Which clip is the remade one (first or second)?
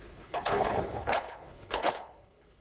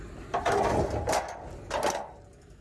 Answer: first